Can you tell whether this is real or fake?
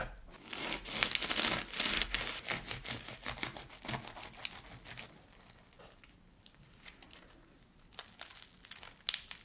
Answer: real